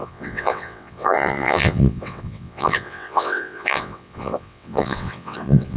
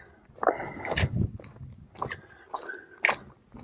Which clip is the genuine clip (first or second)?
second